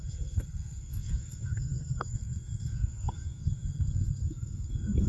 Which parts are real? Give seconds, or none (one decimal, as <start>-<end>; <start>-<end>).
none